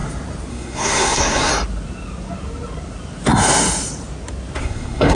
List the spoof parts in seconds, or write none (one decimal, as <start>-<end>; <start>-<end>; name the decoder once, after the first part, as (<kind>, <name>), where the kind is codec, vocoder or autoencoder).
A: 0.5-1.5 (codec, SNAC); 4.6-5.2